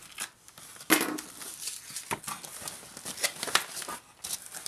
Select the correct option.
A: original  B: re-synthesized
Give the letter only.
A